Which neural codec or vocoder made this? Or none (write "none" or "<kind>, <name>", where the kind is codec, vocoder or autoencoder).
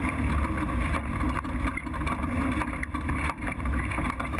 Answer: none